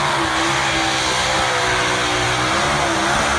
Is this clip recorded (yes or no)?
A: yes